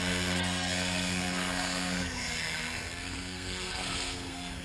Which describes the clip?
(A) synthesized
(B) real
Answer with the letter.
A